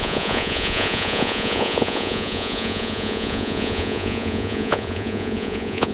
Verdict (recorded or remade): remade